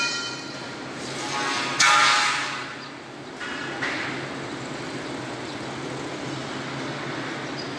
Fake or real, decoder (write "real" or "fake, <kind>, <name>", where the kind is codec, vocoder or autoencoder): real